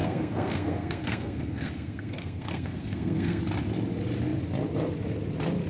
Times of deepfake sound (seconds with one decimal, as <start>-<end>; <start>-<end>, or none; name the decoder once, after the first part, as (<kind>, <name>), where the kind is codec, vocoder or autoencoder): 0.0-3.4 (codec, SNAC)